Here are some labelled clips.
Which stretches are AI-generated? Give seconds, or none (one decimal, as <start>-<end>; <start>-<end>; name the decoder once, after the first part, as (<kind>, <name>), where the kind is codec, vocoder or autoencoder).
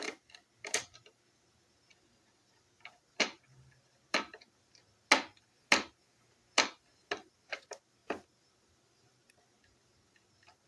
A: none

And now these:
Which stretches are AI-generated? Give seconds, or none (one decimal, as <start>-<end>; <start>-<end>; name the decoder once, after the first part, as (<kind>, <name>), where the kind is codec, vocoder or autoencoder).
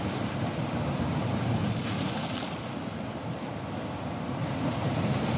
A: 0.0-1.6 (vocoder, BigVGAN v2); 4.8-5.4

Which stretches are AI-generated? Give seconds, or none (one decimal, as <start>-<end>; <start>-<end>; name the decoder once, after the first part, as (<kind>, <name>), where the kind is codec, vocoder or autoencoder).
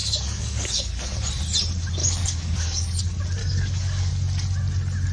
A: 0.0-1.3 (codec, DAC); 2.0-3.0; 3.4-4.1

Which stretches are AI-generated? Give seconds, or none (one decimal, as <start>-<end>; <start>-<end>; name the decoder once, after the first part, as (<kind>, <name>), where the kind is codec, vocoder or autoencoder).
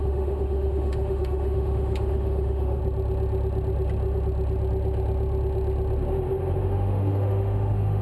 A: 0.0-2.8 (autoencoder, DAC-VAE); 6.6-8.0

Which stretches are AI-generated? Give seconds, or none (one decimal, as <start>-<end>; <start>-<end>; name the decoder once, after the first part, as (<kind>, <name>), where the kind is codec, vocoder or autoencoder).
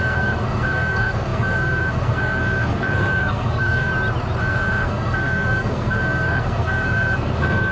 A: 0.0-3.9 (codec, SNAC); 4.4-7.7